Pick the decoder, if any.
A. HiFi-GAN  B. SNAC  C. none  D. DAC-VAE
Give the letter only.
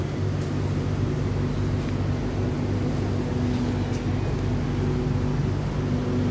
C